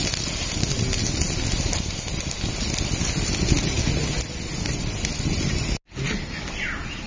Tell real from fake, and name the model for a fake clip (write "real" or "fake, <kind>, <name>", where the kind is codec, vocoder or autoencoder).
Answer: real